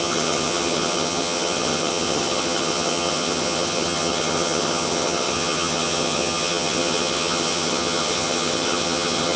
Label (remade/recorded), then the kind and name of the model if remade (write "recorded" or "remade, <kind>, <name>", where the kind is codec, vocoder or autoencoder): remade, vocoder, HiFi-GAN